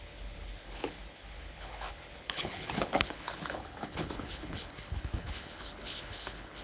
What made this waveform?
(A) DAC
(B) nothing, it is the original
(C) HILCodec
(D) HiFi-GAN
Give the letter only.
C